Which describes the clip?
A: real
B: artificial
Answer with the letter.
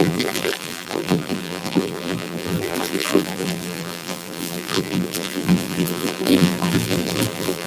B